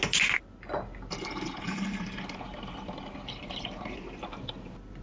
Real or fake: real